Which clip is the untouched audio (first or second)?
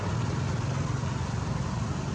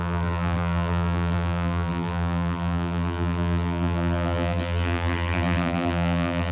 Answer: first